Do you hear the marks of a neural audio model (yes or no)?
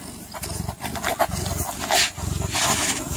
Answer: no